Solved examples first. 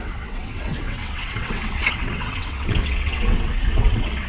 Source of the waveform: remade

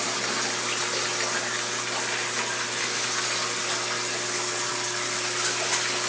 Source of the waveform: recorded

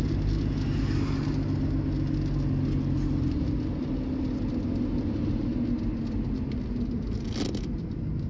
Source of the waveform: recorded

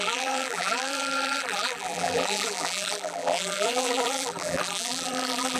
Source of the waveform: remade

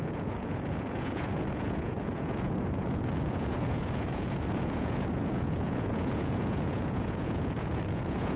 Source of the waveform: remade